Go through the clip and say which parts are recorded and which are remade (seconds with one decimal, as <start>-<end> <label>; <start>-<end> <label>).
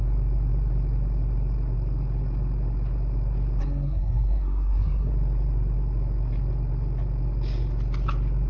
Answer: 0.0-3.6 recorded; 3.6-5.1 remade; 5.1-8.5 recorded